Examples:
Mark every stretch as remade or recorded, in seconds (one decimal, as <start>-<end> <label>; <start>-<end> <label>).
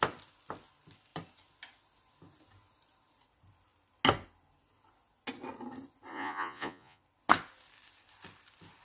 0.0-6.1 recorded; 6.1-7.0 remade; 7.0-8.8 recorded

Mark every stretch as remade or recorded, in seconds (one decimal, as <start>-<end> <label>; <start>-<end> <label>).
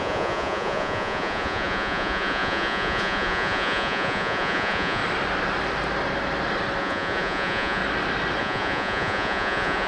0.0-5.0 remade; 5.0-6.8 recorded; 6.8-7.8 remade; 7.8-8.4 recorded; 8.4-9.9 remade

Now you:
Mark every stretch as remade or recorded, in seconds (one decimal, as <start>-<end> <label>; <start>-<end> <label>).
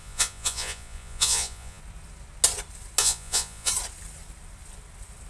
0.0-1.8 remade; 1.8-3.0 recorded; 3.0-3.7 remade; 3.7-5.3 recorded